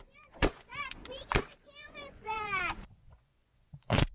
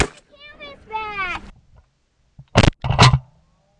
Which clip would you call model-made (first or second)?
first